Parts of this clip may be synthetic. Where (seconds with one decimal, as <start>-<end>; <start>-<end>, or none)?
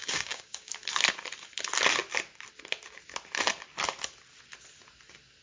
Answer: 0.0-0.7